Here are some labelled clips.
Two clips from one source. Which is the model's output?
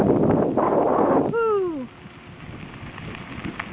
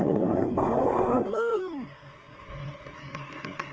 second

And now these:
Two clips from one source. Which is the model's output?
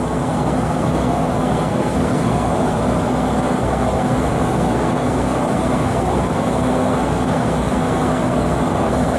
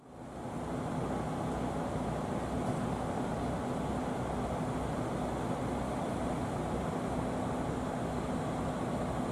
first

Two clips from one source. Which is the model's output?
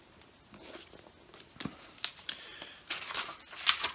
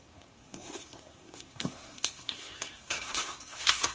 second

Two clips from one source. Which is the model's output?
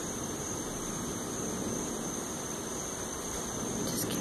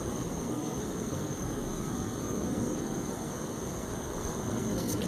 second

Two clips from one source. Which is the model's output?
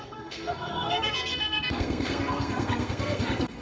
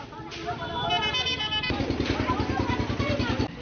first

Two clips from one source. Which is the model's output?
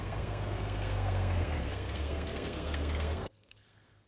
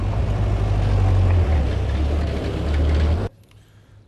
first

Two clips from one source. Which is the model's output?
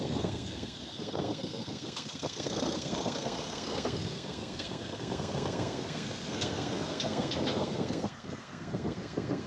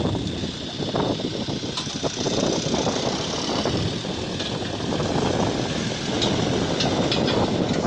first